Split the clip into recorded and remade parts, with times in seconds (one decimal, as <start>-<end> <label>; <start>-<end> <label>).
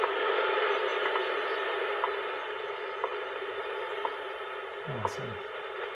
0.0-5.9 recorded